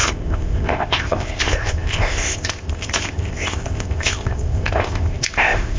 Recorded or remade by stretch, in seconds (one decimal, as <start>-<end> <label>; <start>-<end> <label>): 0.0-5.8 remade